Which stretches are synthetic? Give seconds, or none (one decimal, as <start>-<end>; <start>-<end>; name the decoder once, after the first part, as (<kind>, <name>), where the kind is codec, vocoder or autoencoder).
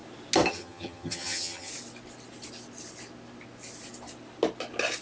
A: 0.5-1.7 (vocoder, HiFi-GAN)